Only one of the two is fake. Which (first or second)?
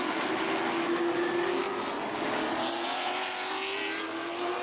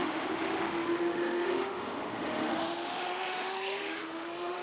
second